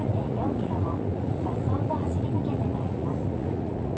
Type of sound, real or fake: fake